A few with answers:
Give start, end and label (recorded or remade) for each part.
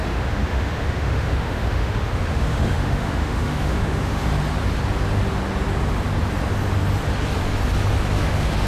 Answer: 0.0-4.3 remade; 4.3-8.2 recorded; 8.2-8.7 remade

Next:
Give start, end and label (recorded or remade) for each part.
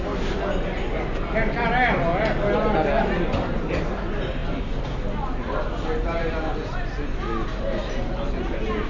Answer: 0.0-8.9 recorded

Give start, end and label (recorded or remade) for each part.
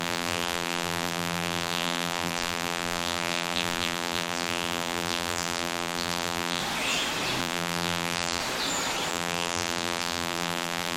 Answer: 0.0-6.6 remade; 6.6-7.4 recorded; 7.4-8.4 remade; 8.4-9.1 recorded; 9.1-11.0 remade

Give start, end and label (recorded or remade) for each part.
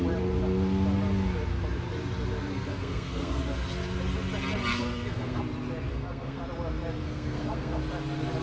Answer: 0.0-2.7 recorded; 2.7-3.4 remade; 3.4-4.7 recorded; 4.7-5.4 remade; 5.4-5.9 recorded; 5.9-6.4 remade; 6.4-7.0 recorded; 7.0-7.8 remade; 7.8-8.4 recorded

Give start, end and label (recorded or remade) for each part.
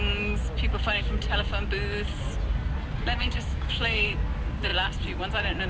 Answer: 0.0-3.2 recorded; 3.2-4.1 remade; 4.1-5.7 recorded